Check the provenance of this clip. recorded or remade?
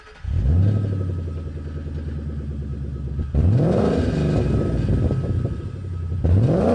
recorded